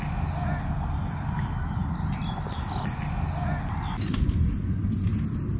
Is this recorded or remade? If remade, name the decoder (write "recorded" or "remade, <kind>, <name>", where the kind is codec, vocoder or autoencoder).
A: recorded